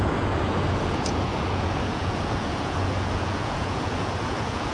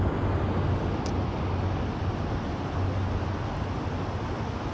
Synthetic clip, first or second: first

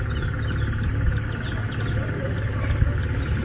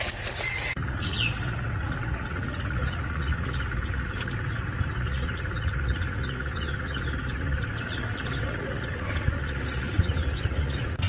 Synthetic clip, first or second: second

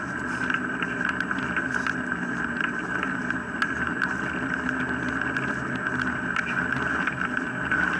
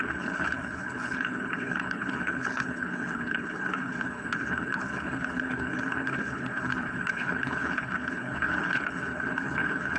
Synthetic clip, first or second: second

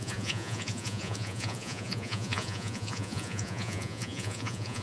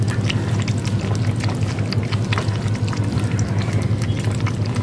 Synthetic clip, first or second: first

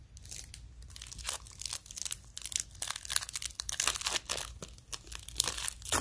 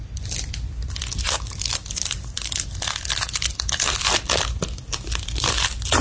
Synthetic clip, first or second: second